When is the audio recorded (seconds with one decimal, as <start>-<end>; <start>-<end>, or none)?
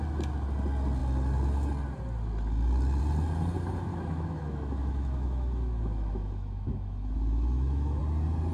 0.0-3.9; 8.0-8.5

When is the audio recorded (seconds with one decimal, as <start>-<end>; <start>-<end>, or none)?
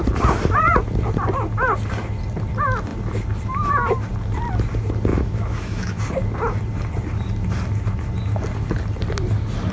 0.0-5.1; 6.0-9.7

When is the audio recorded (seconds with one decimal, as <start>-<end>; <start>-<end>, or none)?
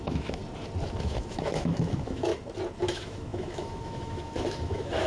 0.4-1.0; 2.3-2.8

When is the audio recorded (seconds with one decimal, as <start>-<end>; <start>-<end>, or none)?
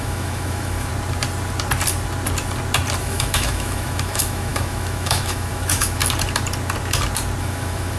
0.9-3.0; 6.0-7.4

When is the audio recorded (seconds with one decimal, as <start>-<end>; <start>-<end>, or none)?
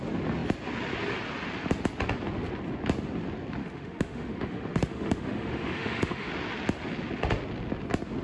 0.0-3.6; 6.3-8.2